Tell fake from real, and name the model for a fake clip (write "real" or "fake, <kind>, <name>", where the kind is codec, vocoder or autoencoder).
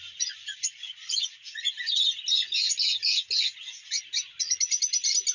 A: real